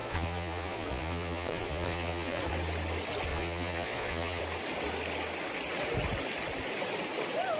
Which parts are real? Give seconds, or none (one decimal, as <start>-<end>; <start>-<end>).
2.4-3.3; 4.4-7.6